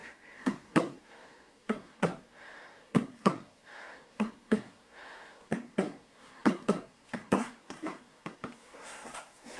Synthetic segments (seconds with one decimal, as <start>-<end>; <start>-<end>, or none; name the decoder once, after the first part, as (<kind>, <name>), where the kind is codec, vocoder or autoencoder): 0.0-9.6 (codec, SNAC)